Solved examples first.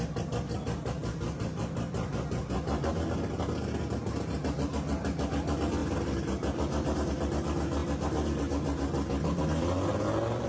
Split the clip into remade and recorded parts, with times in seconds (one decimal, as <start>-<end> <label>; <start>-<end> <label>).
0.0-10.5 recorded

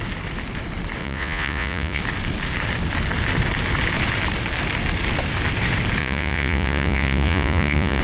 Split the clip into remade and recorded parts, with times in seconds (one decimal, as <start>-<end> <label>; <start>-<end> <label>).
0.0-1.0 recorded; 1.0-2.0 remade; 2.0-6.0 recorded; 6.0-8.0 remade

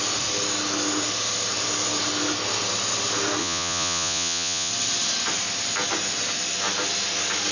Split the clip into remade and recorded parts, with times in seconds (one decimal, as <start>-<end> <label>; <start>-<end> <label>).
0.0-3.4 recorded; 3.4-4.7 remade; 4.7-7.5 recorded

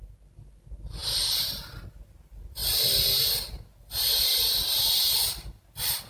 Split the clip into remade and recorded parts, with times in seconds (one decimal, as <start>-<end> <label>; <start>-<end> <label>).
0.0-6.1 recorded

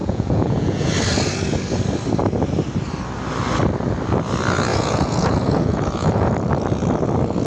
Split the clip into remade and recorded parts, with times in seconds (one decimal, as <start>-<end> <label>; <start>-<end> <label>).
0.0-0.9 remade; 0.9-4.7 recorded; 4.7-6.3 remade; 6.3-7.5 recorded

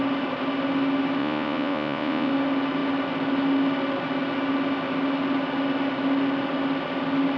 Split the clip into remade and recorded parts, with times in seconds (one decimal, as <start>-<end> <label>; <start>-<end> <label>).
0.0-1.2 recorded; 1.2-2.3 remade; 2.3-7.4 recorded

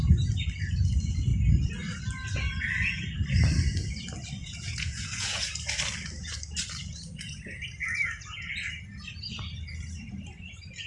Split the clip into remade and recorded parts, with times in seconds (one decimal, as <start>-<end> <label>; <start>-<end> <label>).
0.0-4.4 recorded; 4.4-5.5 remade; 5.5-10.9 recorded